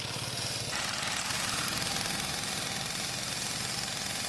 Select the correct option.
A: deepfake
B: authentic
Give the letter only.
B